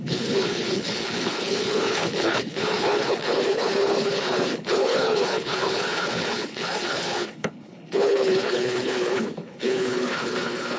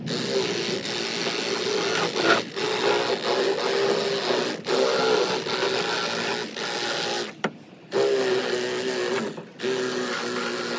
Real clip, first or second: second